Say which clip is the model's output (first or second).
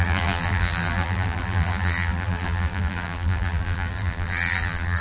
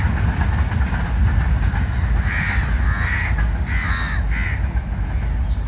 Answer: first